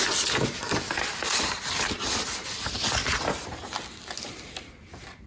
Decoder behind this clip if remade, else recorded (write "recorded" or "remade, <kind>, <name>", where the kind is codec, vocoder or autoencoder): recorded